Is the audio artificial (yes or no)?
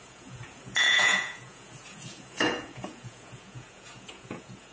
yes